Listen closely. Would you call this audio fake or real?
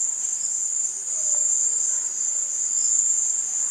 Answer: real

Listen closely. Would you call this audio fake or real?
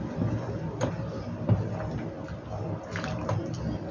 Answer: real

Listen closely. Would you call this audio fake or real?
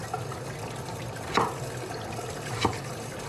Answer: real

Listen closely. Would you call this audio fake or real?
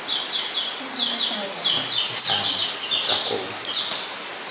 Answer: real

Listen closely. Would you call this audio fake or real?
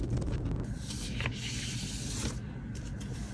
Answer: real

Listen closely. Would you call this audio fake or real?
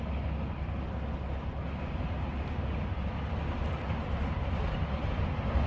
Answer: real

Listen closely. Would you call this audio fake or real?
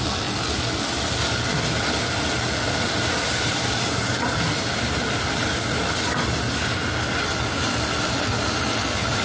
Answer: real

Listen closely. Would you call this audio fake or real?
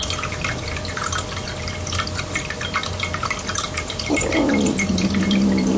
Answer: real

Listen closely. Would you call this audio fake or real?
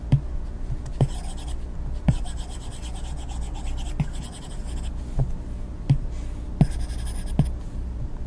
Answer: real